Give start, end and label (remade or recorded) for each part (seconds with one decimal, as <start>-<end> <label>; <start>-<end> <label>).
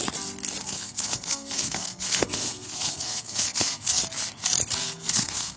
0.0-0.6 recorded; 0.6-4.0 remade; 4.0-4.8 recorded; 4.8-5.6 remade